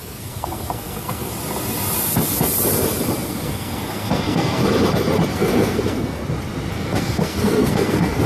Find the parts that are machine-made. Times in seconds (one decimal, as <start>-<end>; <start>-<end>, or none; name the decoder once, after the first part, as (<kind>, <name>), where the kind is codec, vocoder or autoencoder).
0.0-1.3 (codec, SNAC); 3.2-4.6; 5.3-6.2; 6.7-8.3